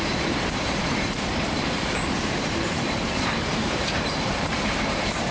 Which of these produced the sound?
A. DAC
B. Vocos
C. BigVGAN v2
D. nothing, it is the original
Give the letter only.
C